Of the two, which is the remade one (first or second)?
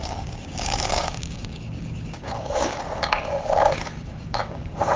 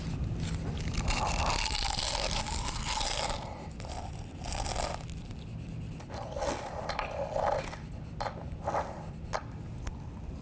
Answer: first